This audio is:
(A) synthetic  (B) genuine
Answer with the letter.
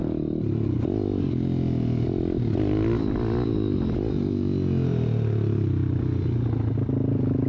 B